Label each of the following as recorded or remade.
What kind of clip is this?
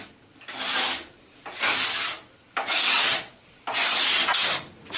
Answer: recorded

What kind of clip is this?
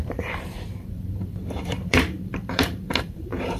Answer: remade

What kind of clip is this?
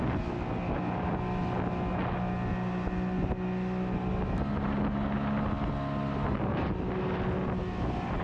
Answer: recorded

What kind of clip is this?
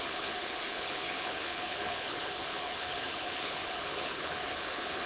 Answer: remade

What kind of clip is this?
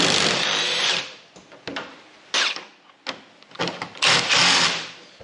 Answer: recorded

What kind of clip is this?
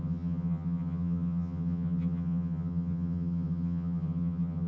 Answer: remade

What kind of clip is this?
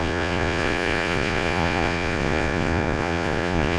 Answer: remade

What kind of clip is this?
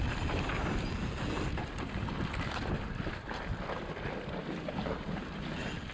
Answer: recorded